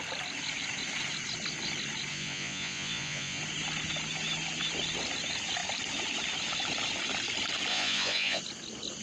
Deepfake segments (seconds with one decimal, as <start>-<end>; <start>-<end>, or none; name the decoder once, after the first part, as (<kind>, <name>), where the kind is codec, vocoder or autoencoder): 2.1-3.4 (vocoder, Vocos); 7.7-8.4